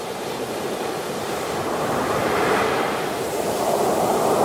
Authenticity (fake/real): fake